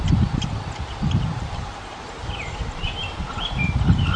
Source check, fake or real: fake